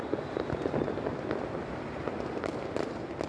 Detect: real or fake real